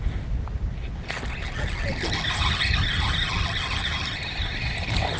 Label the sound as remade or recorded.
recorded